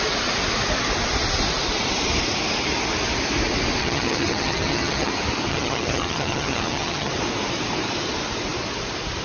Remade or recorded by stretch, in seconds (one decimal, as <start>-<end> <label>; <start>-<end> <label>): 0.0-3.8 recorded; 3.8-5.1 remade; 5.1-5.5 recorded; 5.5-7.1 remade; 7.1-9.2 recorded